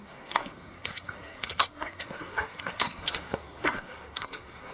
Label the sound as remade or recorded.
remade